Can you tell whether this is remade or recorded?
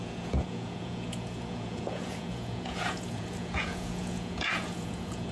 remade